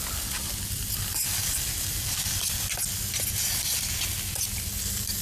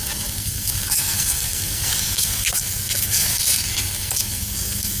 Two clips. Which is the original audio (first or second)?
first